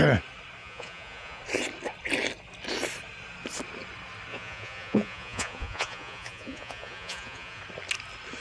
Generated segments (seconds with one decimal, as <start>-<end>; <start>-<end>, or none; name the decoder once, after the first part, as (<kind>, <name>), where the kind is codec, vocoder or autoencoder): 0.6-1.4 (vocoder, Vocos); 4.3-7.6